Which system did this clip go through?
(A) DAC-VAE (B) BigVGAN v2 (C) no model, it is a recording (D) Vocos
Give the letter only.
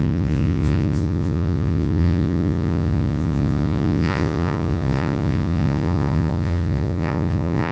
D